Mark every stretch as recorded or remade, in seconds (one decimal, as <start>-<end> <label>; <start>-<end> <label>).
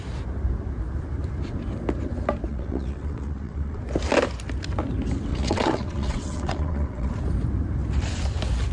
0.0-2.5 recorded; 2.5-3.8 remade; 3.8-5.3 recorded; 5.3-7.1 remade; 7.1-8.7 recorded